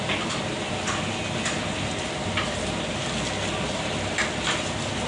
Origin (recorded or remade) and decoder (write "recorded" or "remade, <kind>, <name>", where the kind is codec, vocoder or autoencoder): recorded